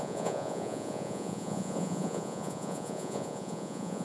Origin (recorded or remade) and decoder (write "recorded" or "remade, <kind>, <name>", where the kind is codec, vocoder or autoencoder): remade, vocoder, Vocos